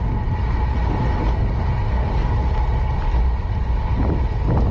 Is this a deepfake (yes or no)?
no